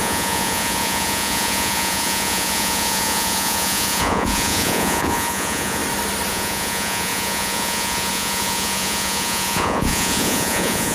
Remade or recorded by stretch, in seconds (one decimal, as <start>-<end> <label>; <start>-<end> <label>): 0.0-5.8 remade; 5.8-6.3 recorded; 6.3-10.9 remade

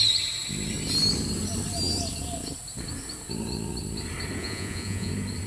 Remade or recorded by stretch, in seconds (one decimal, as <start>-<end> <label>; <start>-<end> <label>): 0.0-4.4 recorded; 4.4-5.1 remade; 5.1-5.5 recorded

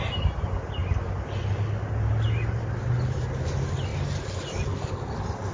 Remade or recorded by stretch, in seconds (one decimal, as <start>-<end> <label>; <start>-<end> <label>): 0.0-5.5 recorded